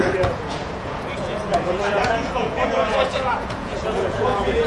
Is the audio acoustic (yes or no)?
no